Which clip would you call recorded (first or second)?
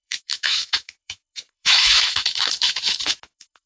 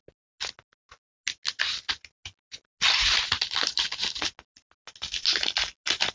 second